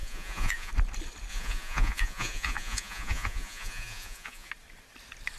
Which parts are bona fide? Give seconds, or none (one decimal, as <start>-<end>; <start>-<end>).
0.7-1.3; 4.5-5.4